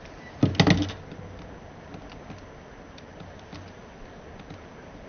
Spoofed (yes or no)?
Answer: no